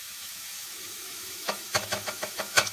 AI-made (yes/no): yes